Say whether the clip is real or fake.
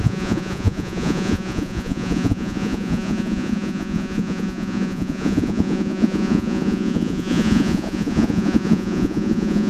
fake